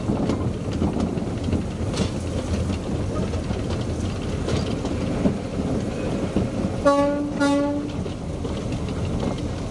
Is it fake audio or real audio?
real